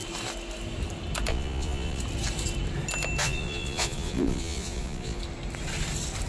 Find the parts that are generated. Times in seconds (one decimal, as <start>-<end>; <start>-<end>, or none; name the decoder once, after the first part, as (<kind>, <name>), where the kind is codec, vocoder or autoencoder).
1.3-2.0 (vocoder, Vocos); 3.2-5.2